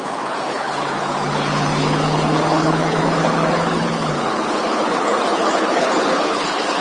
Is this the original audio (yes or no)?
no